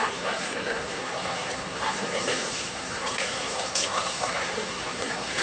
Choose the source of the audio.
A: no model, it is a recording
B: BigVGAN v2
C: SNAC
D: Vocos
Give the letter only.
C